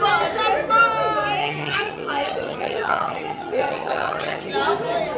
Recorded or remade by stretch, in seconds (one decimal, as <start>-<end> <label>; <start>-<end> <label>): 0.0-1.4 recorded; 1.4-4.5 remade; 4.5-5.2 recorded